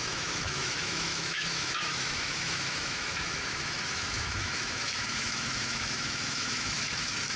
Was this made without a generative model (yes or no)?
no